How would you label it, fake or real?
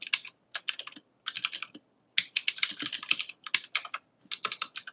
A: real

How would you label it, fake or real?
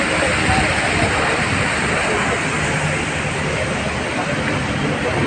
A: real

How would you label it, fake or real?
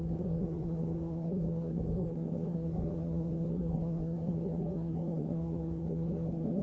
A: fake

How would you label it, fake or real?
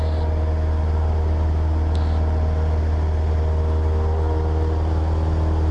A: real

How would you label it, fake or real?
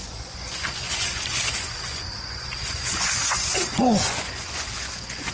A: fake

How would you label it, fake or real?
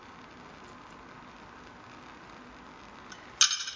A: real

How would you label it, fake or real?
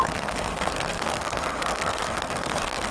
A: fake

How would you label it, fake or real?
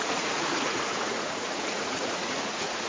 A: fake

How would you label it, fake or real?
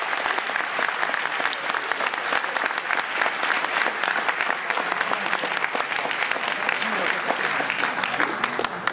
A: real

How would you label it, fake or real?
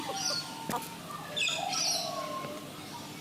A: real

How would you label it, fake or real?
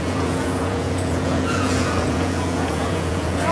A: fake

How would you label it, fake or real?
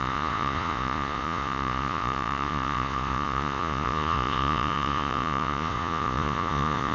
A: fake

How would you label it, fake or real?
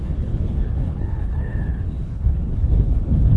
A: fake